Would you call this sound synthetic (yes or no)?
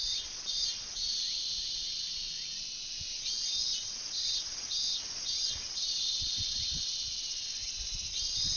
yes